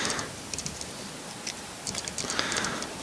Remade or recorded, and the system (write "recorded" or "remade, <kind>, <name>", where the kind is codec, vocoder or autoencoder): recorded